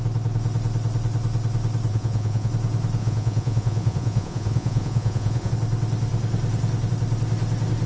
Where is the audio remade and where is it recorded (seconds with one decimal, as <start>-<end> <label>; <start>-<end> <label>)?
0.0-1.9 recorded; 1.9-2.5 remade; 2.5-3.0 recorded; 3.0-5.5 remade; 5.5-7.9 recorded